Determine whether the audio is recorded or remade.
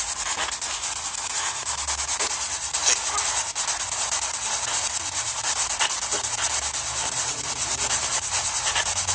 recorded